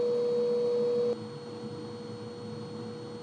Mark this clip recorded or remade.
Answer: recorded